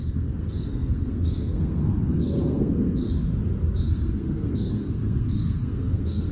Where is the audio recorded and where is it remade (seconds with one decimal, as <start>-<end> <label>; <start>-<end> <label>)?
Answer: 0.0-3.0 remade; 3.0-3.8 recorded; 3.8-6.3 remade